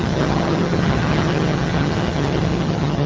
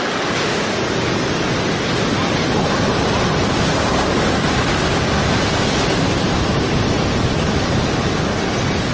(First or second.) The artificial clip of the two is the first